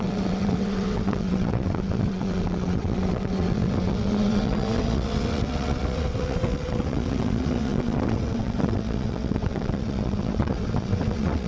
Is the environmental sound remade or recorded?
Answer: remade